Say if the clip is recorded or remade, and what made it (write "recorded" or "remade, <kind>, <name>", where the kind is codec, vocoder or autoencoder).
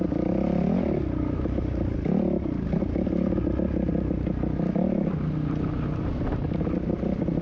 recorded